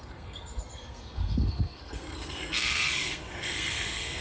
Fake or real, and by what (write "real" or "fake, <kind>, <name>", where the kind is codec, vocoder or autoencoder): fake, codec, SNAC